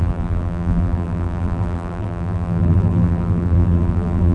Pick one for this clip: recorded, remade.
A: remade